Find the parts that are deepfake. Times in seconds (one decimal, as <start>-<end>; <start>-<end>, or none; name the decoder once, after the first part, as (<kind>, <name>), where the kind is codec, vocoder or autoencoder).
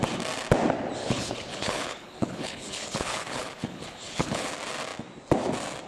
1.0-4.5 (codec, HILCodec)